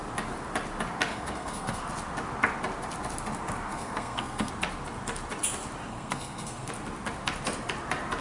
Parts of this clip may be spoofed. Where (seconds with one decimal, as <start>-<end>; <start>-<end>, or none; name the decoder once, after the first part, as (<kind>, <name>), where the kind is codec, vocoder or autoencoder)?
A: 1.1-1.8 (codec, SNAC); 3.7-4.5; 5.9-6.7